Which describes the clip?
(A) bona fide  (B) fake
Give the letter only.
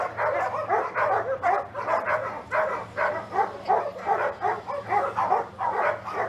A